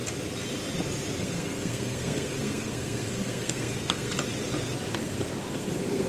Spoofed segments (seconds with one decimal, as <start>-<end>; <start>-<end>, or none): 1.2-4.1; 4.9-6.1